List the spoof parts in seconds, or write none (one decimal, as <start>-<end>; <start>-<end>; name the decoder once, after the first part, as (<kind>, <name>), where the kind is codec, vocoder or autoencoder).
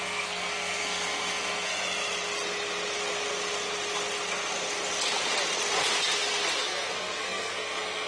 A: 0.0-1.7 (codec, SNAC); 6.6-8.1